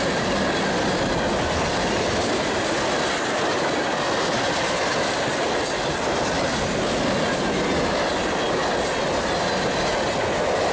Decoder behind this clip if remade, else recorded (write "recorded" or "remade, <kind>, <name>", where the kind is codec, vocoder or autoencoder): recorded